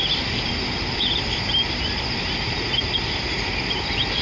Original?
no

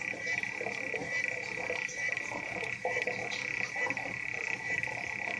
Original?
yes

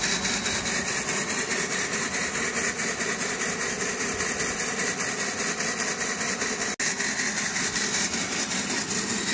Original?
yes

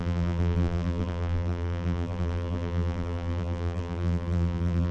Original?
no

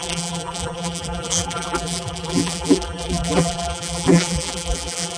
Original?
no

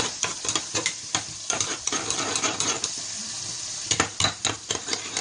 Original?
no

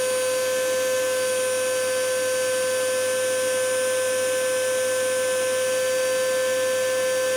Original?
yes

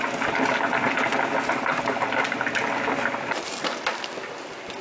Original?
yes